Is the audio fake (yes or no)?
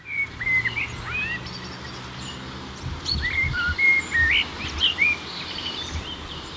no